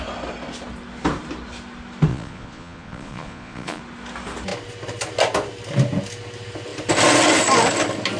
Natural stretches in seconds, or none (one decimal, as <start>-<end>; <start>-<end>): 0.0-2.1; 3.8-8.2